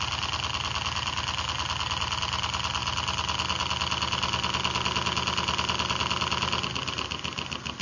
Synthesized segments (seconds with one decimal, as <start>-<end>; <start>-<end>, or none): none